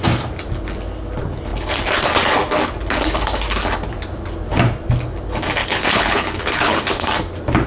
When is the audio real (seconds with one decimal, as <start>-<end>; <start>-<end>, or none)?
0.0-5.6; 6.8-7.7